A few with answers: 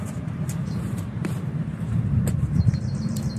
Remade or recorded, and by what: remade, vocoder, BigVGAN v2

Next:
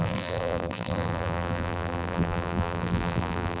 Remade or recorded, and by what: remade, vocoder, BigVGAN v2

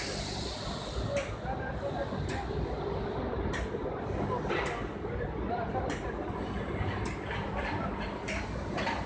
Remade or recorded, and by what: recorded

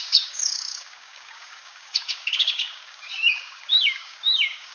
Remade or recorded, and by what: remade, codec, DAC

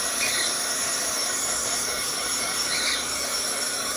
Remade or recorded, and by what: remade, codec, DAC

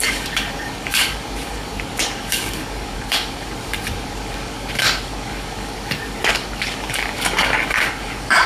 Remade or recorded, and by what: remade, codec, DAC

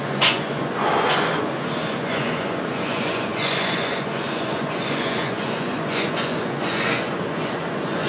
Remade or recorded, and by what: remade, vocoder, Vocos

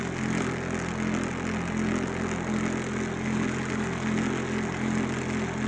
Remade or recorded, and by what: recorded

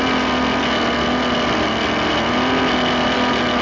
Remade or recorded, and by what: recorded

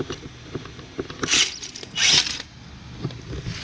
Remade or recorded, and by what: recorded